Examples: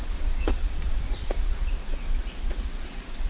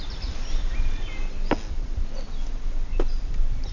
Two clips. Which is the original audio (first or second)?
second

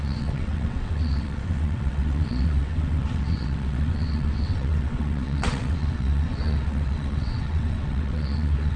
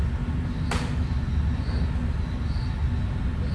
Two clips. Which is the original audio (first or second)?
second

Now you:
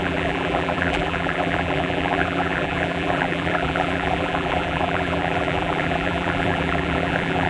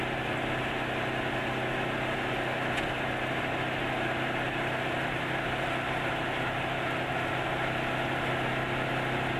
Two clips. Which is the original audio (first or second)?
second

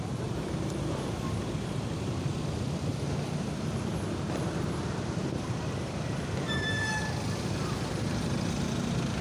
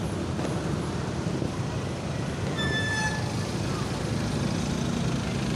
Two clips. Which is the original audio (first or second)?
second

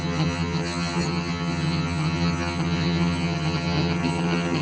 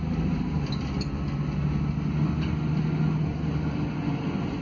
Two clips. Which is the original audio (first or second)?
second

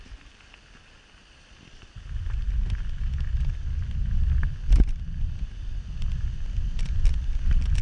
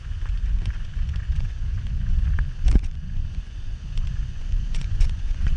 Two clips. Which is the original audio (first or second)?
first